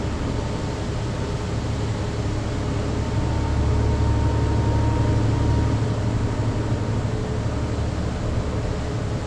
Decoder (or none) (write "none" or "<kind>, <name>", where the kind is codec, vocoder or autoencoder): none